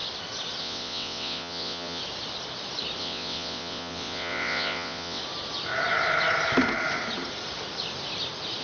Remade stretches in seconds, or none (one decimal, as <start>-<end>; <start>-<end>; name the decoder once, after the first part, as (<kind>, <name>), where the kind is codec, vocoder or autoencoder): 0.6-2.0 (vocoder, WaveNeXt); 3.0-5.2